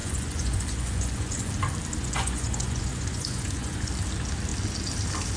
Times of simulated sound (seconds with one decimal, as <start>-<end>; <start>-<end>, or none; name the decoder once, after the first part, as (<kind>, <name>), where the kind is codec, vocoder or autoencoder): 0.0-1.5 (vocoder, Vocos); 2.0-3.9